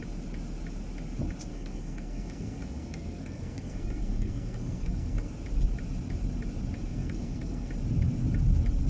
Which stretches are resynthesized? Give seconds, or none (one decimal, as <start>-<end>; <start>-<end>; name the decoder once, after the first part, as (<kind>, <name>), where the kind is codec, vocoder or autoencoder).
1.5-5.3 (codec, SNAC); 6.9-7.7